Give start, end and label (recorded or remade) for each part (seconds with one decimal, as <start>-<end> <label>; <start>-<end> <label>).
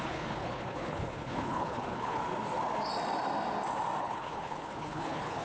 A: 0.0-2.2 remade; 2.2-4.0 recorded; 4.0-5.4 remade